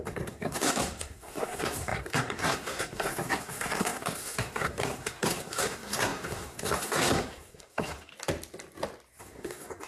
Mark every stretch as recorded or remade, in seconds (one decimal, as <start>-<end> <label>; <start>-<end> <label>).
0.0-8.1 remade; 8.1-9.2 recorded; 9.2-9.9 remade